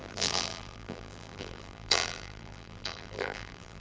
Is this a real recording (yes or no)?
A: no